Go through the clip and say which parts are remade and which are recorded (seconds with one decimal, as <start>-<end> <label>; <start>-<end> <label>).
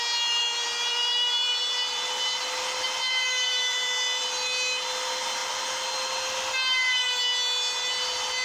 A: 0.0-0.4 recorded; 0.4-4.2 remade; 4.2-8.4 recorded